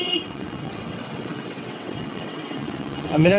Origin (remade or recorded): remade